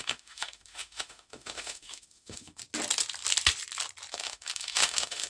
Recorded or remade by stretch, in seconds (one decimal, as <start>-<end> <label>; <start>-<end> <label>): 0.0-2.6 remade; 2.6-4.1 recorded; 4.1-5.3 remade